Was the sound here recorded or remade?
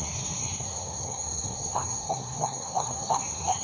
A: remade